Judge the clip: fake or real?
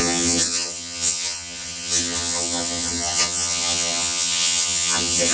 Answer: fake